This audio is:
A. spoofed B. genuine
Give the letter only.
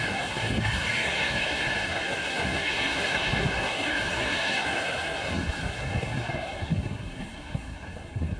A